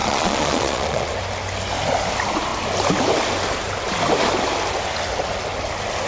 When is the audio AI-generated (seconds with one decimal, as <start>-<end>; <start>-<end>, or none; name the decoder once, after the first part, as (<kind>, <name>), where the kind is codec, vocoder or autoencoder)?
0.0-1.1 (vocoder, Vocos)